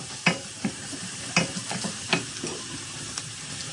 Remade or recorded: remade